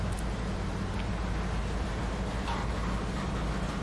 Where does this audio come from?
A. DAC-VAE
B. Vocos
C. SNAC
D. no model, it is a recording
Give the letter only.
D